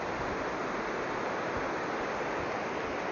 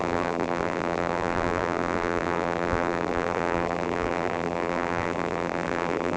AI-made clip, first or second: second